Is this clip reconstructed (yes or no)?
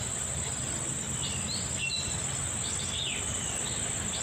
no